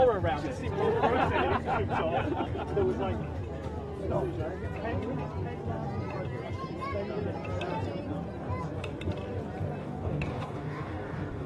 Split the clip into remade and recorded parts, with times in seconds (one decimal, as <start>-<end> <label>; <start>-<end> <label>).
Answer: 0.0-9.8 recorded; 9.8-11.5 remade